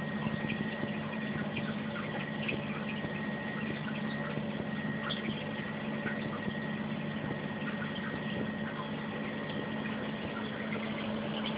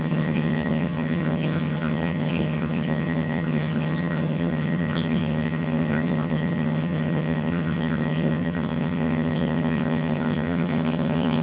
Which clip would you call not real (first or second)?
second